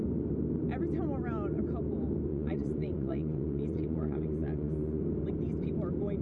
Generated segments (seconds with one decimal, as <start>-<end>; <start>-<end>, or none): 2.3-5.0